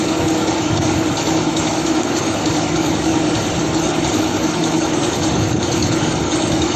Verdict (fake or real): fake